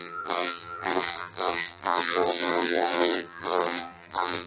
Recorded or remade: remade